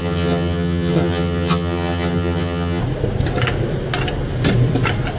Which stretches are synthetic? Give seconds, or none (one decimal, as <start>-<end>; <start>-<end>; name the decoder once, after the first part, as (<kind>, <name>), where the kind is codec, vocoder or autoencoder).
0.0-2.8 (vocoder, HiFi-GAN)